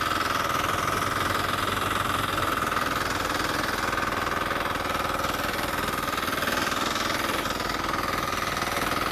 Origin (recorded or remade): recorded